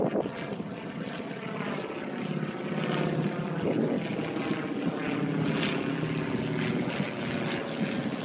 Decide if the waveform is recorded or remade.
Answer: recorded